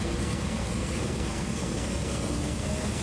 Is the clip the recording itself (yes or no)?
no